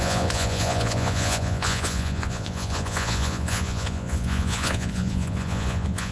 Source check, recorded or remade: remade